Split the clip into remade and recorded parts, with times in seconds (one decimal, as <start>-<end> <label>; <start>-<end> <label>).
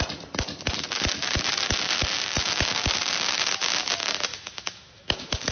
0.0-4.3 recorded; 4.3-5.5 remade